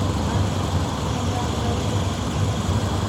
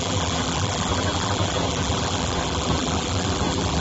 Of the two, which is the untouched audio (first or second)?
first